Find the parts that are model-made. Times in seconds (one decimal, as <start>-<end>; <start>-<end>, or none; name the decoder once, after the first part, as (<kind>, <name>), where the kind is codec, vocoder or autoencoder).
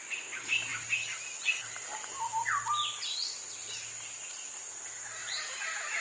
none